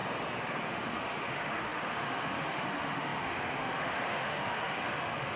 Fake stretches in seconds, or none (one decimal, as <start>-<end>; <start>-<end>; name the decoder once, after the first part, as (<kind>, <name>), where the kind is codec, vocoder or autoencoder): 0.7-5.4 (autoencoder, DAC-VAE)